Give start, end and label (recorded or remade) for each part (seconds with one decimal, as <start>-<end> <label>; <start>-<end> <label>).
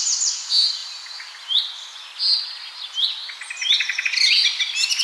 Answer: 0.0-5.0 recorded